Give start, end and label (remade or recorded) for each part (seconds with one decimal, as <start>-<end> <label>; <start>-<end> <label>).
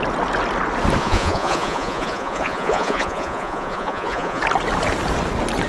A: 0.0-1.0 recorded; 1.0-4.4 remade; 4.4-5.7 recorded